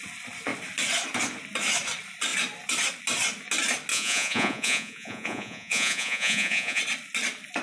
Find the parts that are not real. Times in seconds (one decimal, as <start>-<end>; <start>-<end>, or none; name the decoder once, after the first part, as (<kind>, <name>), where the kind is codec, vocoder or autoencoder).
3.9-6.8 (vocoder, Vocos)